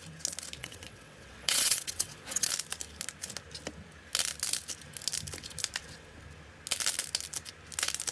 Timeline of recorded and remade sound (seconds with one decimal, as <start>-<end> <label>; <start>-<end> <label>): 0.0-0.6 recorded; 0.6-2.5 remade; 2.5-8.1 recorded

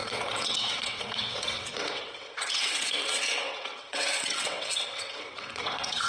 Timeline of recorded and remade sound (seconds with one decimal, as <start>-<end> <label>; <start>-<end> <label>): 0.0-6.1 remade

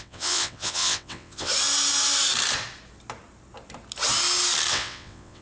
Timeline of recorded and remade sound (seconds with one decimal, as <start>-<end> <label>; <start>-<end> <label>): 0.0-1.5 remade; 1.5-4.7 recorded; 4.7-5.4 remade